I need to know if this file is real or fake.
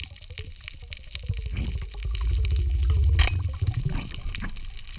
real